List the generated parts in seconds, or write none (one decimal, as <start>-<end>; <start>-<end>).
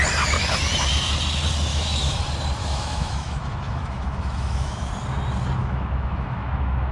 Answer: 1.7-2.2; 2.6-4.9; 5.6-6.9